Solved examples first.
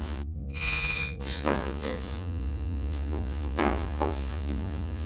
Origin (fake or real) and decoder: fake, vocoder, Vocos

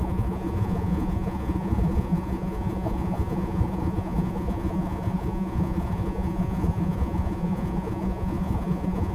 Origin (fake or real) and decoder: fake, vocoder, Vocos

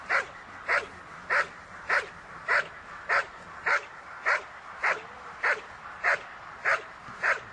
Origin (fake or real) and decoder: real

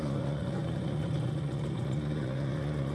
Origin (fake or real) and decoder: fake, vocoder, Vocos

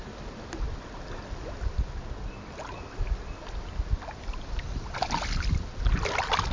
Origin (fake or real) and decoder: real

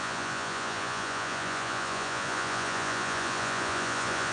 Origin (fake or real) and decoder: fake, vocoder, Vocos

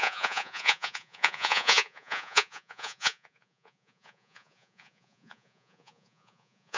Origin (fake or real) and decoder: fake, vocoder, Vocos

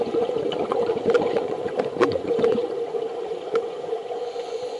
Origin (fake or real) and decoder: fake, vocoder, Vocos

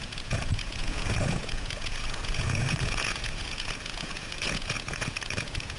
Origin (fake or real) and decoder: fake, vocoder, Vocos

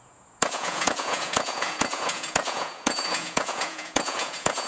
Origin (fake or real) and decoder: fake, vocoder, Vocos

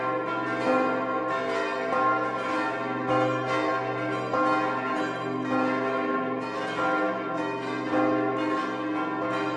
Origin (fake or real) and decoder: real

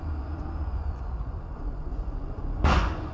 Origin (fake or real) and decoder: fake, vocoder, Vocos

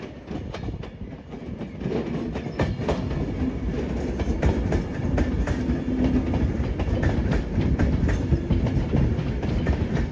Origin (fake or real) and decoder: real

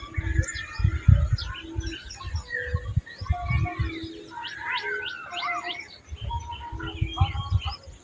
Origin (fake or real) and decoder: real